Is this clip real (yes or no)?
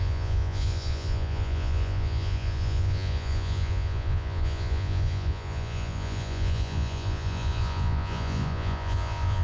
no